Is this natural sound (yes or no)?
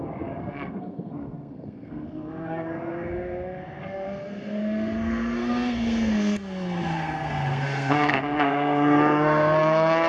no